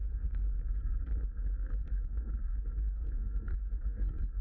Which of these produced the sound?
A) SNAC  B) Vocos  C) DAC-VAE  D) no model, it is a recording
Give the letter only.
A